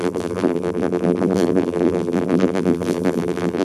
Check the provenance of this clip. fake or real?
fake